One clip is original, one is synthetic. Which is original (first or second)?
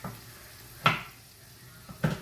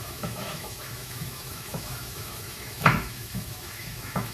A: first